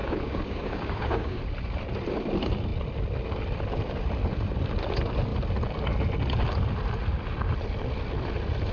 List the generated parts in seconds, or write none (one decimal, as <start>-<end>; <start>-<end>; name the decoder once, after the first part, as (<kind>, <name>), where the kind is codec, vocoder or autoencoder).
0.0-1.4 (codec, DAC)